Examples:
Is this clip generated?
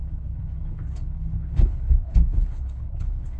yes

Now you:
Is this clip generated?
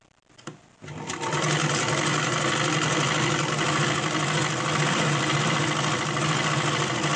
no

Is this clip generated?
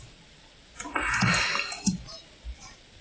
no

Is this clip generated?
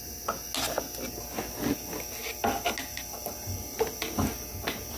no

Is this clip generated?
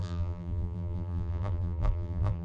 yes